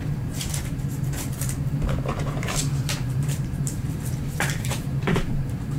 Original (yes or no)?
no